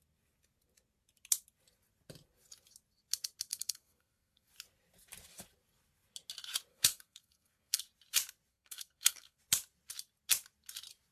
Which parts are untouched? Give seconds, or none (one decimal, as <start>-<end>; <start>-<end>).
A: 0.0-3.5; 4.5-6.7; 7.8-8.5; 9.4-11.1